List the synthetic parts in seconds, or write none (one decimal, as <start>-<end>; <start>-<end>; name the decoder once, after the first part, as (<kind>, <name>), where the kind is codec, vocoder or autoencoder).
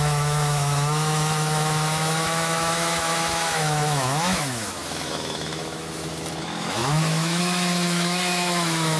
0.0-9.0 (autoencoder, DAC-VAE)